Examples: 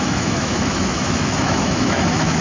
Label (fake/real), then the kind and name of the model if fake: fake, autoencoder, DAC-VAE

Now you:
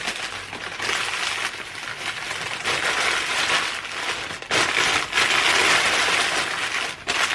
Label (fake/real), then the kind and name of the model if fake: real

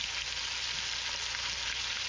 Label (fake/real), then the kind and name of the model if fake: real